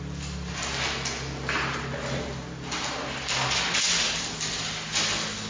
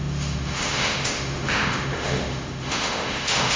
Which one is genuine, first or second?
first